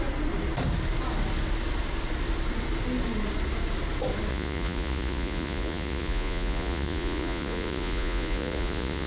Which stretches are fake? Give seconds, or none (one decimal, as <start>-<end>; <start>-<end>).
4.3-9.1